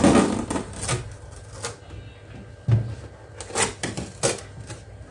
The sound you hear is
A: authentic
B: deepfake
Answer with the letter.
A